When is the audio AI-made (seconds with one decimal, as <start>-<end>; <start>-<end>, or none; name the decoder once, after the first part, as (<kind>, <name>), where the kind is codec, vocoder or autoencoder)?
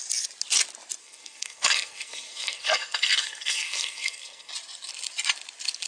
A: 1.0-4.5 (codec, SNAC)